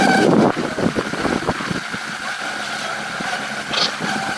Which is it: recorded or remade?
recorded